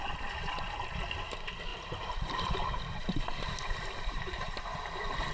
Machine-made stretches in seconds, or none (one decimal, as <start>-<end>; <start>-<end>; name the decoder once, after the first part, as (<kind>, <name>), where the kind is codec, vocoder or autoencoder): 1.7-5.3 (vocoder, BigVGAN v2)